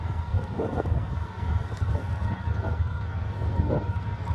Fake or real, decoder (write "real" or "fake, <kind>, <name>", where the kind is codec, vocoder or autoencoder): fake, codec, SNAC